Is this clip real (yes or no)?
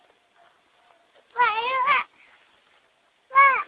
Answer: yes